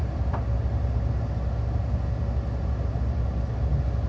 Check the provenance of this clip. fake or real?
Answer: real